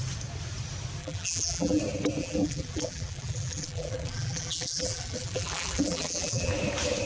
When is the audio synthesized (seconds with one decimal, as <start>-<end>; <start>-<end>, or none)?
1.0-1.8; 2.2-6.5